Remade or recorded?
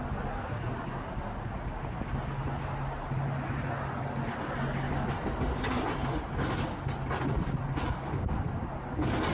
recorded